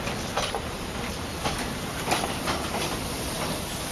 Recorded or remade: recorded